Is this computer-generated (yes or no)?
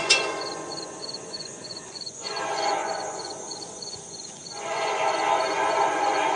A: yes